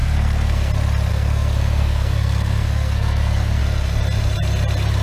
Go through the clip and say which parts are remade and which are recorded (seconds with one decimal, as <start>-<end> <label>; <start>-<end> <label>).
0.0-0.7 remade; 0.7-1.1 recorded; 1.1-3.6 remade; 3.6-5.0 recorded